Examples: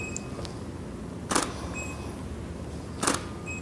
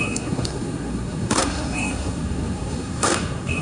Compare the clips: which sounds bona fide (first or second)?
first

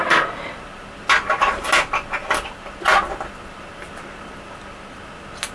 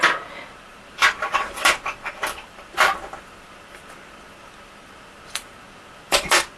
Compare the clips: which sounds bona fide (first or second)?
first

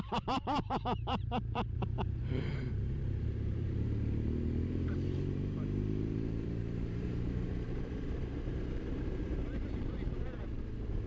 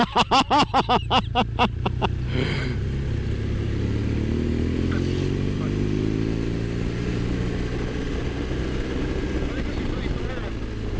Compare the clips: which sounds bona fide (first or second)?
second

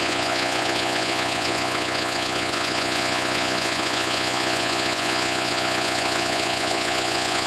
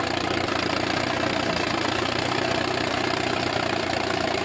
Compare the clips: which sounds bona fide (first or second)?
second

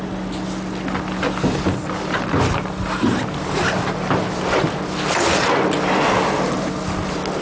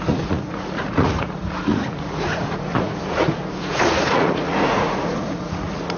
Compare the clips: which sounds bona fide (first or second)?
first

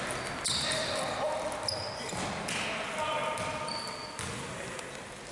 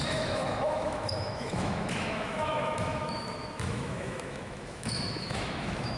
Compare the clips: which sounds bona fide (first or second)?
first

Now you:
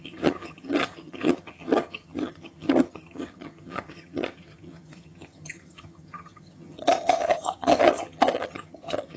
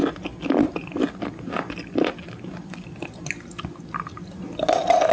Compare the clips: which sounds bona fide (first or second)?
second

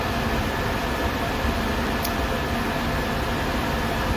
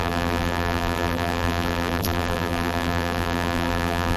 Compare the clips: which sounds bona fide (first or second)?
first